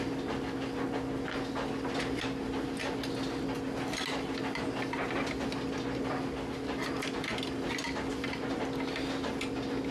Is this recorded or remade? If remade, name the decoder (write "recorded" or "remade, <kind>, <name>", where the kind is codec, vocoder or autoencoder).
recorded